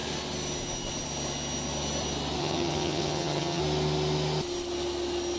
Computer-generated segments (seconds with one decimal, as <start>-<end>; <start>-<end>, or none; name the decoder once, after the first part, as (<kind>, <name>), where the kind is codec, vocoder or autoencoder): 2.4-3.6 (vocoder, HiFi-GAN)